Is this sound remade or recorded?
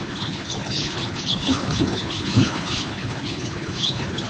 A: remade